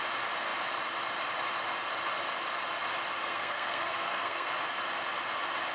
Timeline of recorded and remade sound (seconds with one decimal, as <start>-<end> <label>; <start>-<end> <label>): 0.0-3.2 recorded; 3.2-4.5 remade; 4.5-5.7 recorded